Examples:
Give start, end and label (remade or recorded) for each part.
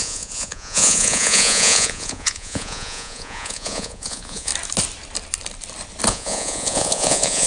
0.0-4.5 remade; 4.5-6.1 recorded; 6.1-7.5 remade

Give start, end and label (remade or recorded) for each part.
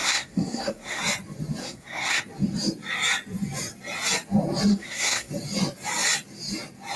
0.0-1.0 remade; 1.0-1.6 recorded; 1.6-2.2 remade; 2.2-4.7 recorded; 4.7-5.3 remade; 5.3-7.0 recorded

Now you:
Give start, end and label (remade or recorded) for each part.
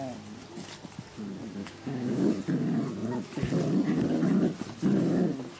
0.0-1.6 recorded; 1.6-2.3 remade; 2.3-5.6 recorded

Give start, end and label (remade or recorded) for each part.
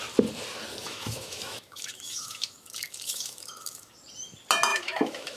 0.0-0.8 recorded; 0.8-3.9 remade; 3.9-4.7 recorded; 4.7-5.4 remade